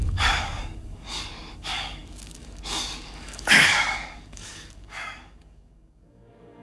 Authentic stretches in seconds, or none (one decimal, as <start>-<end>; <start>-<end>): none